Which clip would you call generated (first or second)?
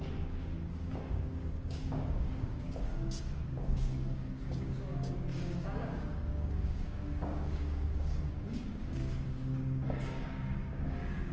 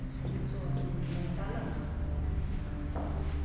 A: first